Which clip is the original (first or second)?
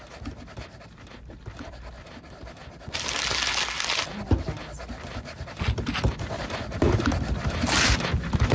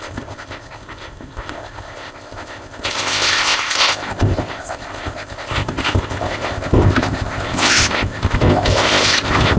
first